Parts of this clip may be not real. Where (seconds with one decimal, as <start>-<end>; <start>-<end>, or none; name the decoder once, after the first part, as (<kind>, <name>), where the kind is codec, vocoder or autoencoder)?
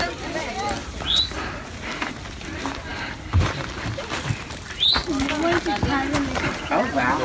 0.0-0.8 (vocoder, BigVGAN v2); 2.0-5.0; 6.8-7.2